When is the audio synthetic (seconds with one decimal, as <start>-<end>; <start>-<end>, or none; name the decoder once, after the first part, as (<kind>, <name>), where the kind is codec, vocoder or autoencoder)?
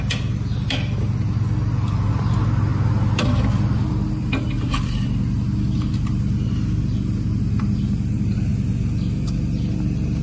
none